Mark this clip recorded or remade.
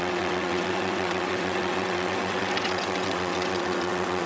remade